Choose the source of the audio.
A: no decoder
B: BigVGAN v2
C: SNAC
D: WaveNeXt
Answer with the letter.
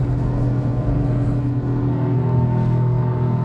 C